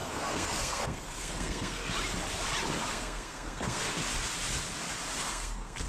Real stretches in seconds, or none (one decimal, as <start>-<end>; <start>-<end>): 1.8-2.9; 3.8-5.3